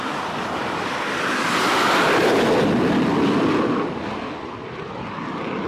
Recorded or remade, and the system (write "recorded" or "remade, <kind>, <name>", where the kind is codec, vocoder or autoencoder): remade, vocoder, BigVGAN v2